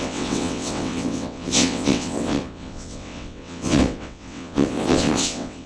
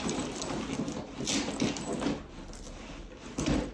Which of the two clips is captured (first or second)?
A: second